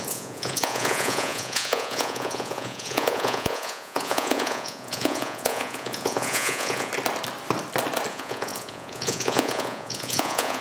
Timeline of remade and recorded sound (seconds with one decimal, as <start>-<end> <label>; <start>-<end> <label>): 0.0-6.9 remade; 6.9-8.1 recorded; 8.1-10.6 remade

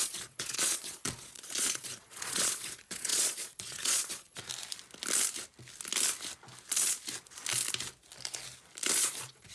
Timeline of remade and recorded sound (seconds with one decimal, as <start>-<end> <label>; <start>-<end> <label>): 0.0-4.5 remade; 4.5-9.0 recorded; 9.0-9.5 remade

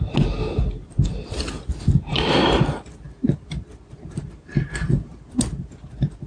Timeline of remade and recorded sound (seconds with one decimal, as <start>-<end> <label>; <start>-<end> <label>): 0.0-6.3 recorded

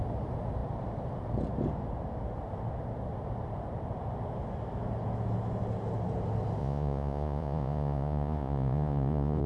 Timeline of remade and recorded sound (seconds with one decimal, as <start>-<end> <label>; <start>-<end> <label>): 0.0-6.6 recorded; 6.6-9.5 remade

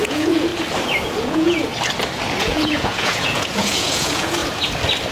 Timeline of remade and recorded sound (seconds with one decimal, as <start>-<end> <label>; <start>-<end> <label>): 0.0-0.5 remade; 0.5-1.2 recorded; 1.2-1.7 remade; 1.7-2.4 recorded; 2.4-4.4 remade; 4.4-5.1 recorded